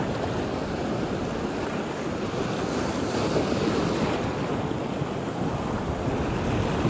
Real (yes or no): yes